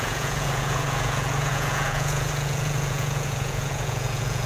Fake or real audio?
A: fake